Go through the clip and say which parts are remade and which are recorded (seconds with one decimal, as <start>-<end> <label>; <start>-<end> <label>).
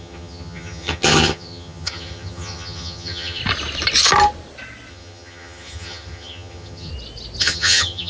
0.0-3.4 remade; 3.4-4.9 recorded; 4.9-6.9 remade; 6.9-7.4 recorded; 7.4-8.1 remade